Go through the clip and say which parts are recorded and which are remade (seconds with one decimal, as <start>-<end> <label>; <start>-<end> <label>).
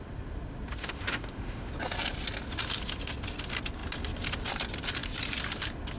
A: 0.0-0.8 recorded; 0.8-1.7 remade; 1.7-6.0 recorded